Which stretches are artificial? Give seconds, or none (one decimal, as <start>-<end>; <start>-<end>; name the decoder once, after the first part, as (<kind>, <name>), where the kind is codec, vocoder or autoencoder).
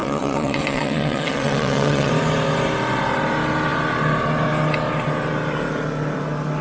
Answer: 0.0-2.1 (vocoder, WaveNeXt)